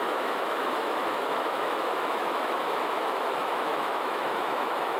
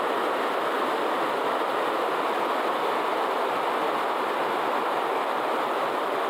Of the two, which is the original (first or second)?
second